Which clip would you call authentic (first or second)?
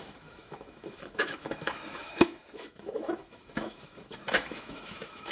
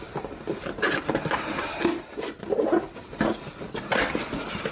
second